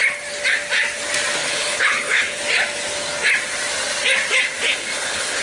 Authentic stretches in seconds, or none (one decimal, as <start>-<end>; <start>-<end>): 0.0-1.4; 2.4-4.7